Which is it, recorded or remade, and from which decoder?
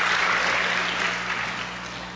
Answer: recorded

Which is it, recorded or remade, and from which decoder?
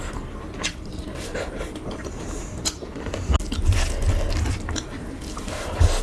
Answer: recorded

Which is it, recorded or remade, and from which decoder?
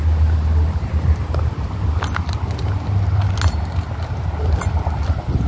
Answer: recorded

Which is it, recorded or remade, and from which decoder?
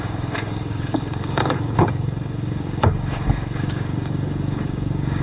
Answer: remade, codec, DAC